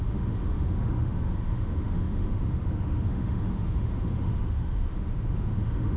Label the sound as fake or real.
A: fake